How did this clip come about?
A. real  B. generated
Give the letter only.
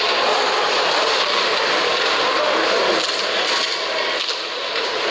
A